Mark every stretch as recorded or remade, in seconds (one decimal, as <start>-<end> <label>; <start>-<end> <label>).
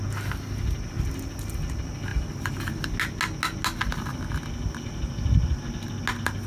0.0-6.5 recorded